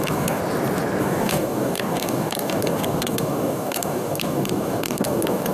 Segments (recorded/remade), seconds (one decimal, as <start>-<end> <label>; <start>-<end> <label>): 0.0-0.4 remade; 0.4-1.0 recorded; 1.0-5.5 remade